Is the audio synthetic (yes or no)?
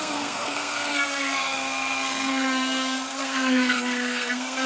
yes